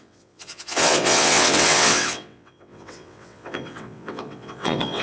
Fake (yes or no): yes